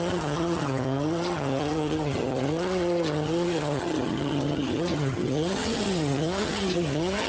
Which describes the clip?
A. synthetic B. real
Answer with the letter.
A